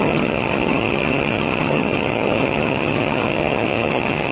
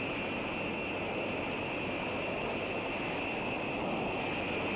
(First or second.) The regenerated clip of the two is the first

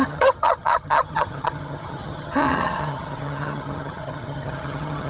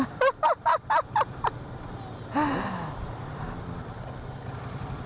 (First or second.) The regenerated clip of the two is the first